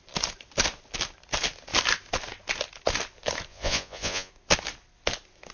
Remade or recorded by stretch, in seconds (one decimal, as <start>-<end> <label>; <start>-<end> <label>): 0.0-3.5 recorded; 3.5-4.3 remade; 4.3-5.5 recorded